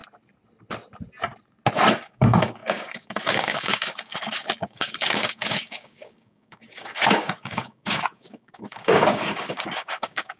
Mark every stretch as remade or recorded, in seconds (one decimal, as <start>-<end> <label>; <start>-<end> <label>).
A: 0.0-1.9 recorded; 1.9-10.4 remade